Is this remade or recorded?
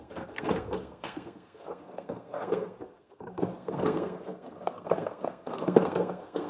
remade